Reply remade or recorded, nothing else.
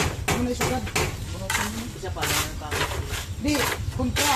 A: recorded